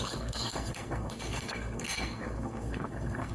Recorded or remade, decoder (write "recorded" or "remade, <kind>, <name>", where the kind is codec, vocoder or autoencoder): remade, codec, SNAC